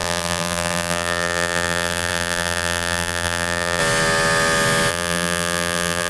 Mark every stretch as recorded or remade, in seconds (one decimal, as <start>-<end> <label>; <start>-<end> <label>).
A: 0.0-3.8 remade; 3.8-4.9 recorded; 4.9-6.1 remade

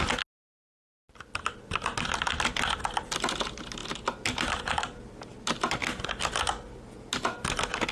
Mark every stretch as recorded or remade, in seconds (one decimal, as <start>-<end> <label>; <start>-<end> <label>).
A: 0.0-7.9 recorded

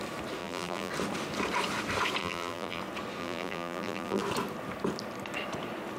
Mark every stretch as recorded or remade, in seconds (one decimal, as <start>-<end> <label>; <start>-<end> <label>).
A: 0.0-0.4 recorded; 0.4-0.9 remade; 0.9-2.2 recorded; 2.2-2.8 remade; 2.8-3.2 recorded; 3.2-4.2 remade; 4.2-6.0 recorded

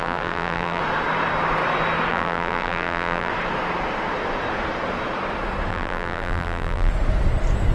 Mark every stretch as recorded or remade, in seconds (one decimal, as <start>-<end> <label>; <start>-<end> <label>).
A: 0.0-0.8 remade; 0.8-2.1 recorded; 2.1-3.3 remade; 3.3-5.7 recorded; 5.7-6.9 remade; 6.9-7.7 recorded

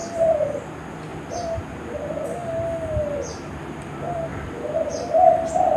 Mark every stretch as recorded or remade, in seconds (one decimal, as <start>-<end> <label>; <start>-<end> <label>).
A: 0.0-0.6 remade; 0.6-4.3 recorded; 4.3-4.9 remade; 4.9-5.8 recorded

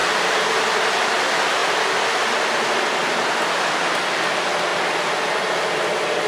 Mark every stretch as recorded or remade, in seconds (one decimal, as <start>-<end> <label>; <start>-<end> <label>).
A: 0.0-0.6 remade; 0.6-4.7 recorded; 4.7-5.5 remade; 5.5-6.3 recorded

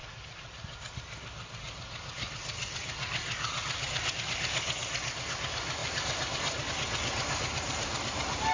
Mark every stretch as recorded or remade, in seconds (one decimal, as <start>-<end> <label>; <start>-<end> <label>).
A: 0.0-3.2 recorded; 3.2-4.1 remade; 4.1-5.8 recorded; 5.8-6.7 remade; 6.7-8.5 recorded

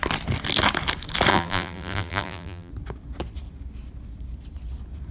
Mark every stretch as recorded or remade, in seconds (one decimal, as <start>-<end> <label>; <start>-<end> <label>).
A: 0.0-1.3 recorded; 1.3-2.7 remade; 2.7-5.1 recorded